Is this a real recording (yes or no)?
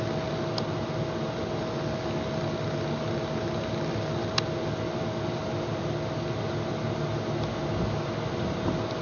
yes